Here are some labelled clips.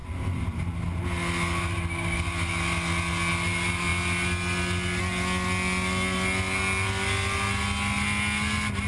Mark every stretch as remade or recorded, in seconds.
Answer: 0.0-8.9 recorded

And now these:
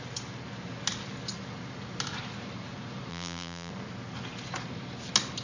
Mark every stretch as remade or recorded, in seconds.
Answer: 0.0-3.1 recorded; 3.1-3.7 remade; 3.7-5.4 recorded

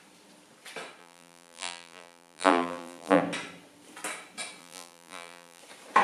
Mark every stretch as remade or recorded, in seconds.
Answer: 0.0-1.0 recorded; 1.0-3.2 remade; 3.2-4.6 recorded; 4.6-5.6 remade; 5.6-6.0 recorded

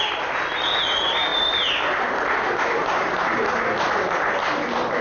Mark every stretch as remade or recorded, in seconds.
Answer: 0.0-5.0 recorded

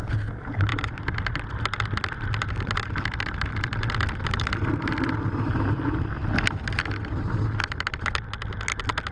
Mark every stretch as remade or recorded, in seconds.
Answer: 0.0-0.7 recorded; 0.7-5.2 remade; 5.2-9.1 recorded

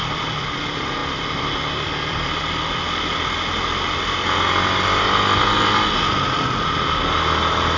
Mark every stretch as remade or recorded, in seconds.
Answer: 0.0-1.0 recorded; 1.0-2.4 remade; 2.4-7.8 recorded